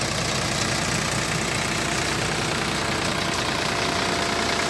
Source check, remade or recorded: recorded